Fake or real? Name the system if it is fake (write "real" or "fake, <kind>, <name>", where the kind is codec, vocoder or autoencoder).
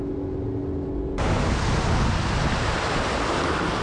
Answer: real